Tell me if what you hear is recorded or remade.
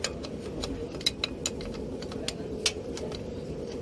recorded